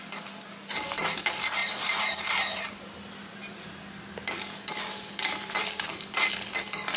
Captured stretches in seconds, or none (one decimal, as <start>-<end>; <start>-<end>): 0.0-1.6; 2.8-7.0